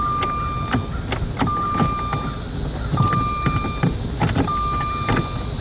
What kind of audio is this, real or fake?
real